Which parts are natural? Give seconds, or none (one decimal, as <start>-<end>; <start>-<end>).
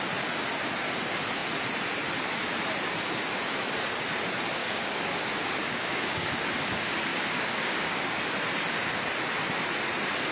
0.0-4.6; 6.3-7.1; 8.3-10.3